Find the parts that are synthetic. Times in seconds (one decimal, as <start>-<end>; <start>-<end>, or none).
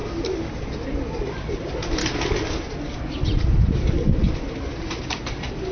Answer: 1.5-2.0; 3.6-4.2; 4.8-5.7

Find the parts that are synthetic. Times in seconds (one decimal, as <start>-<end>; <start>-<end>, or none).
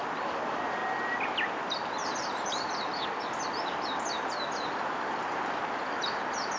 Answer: 0.0-0.8; 1.9-2.5; 4.8-6.6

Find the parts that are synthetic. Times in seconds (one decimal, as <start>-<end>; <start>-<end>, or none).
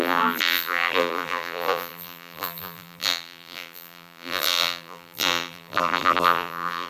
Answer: 0.0-6.9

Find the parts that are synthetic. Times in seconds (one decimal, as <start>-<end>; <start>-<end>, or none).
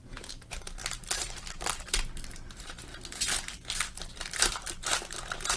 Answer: 0.0-0.8; 2.5-2.9; 4.1-5.6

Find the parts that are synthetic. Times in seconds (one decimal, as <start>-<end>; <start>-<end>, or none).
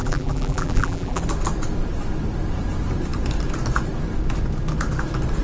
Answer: 0.0-1.2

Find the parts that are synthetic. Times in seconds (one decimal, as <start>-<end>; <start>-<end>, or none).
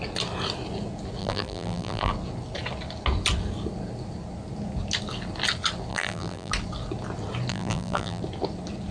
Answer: 1.2-2.1; 5.9-6.5; 7.5-8.2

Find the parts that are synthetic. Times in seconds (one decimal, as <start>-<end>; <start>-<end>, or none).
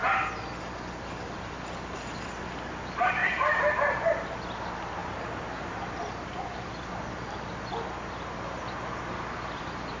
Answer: 3.2-3.7; 5.0-6.1